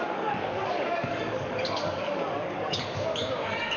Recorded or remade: remade